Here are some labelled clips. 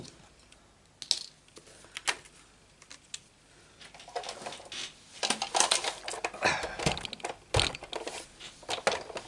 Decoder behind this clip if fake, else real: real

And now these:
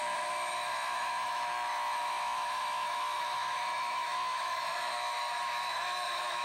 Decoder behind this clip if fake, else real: fake, autoencoder, DAC-VAE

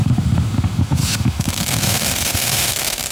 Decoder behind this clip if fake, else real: fake, autoencoder, DAC-VAE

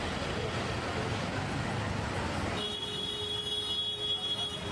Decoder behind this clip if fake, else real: real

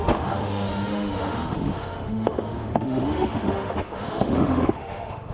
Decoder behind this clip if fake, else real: fake, autoencoder, DAC-VAE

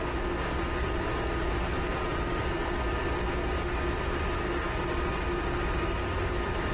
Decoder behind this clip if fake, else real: real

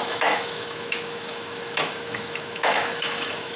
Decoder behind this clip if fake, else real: fake, autoencoder, DAC-VAE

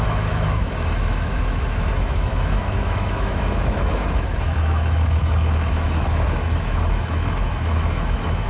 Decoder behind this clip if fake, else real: fake, autoencoder, DAC-VAE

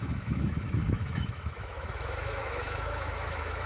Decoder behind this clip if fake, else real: fake, autoencoder, DAC-VAE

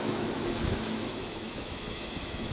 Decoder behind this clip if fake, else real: fake, autoencoder, DAC-VAE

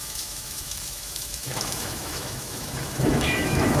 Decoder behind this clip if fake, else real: fake, autoencoder, DAC-VAE